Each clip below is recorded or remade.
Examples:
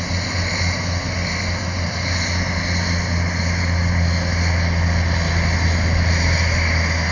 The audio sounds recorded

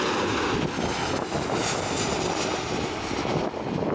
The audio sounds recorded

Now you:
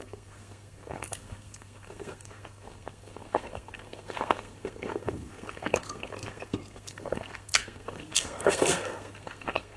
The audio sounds remade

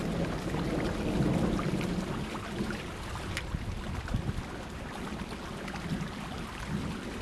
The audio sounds recorded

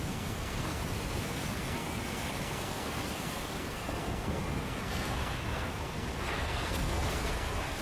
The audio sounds remade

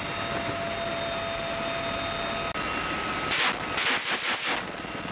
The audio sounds recorded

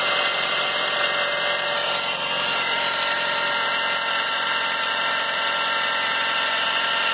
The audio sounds recorded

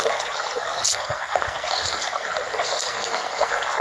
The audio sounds remade